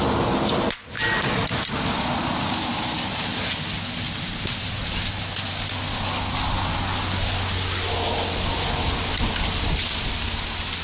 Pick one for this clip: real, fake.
real